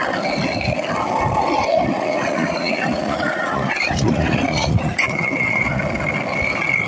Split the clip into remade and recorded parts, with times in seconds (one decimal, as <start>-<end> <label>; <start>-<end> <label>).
0.0-1.7 recorded; 1.7-5.8 remade; 5.8-6.9 recorded